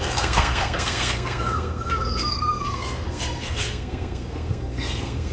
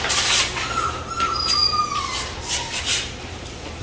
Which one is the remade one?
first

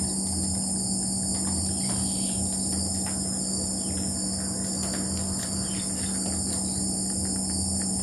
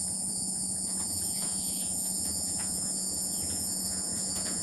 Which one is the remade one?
second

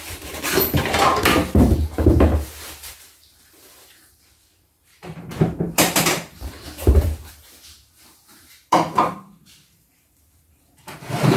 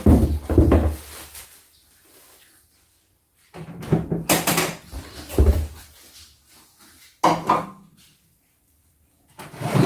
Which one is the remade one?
first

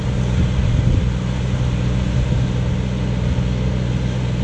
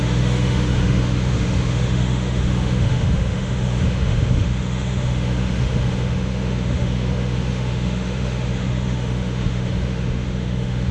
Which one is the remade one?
second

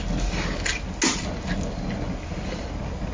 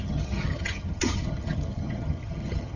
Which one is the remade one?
second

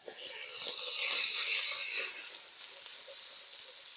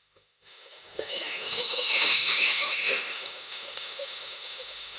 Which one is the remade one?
second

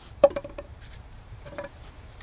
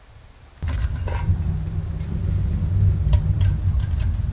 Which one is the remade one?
first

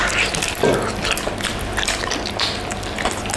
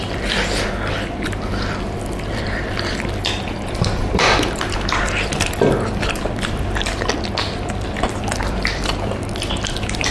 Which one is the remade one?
second